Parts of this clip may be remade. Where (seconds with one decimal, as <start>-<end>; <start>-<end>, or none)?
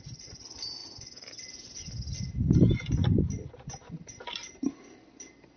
none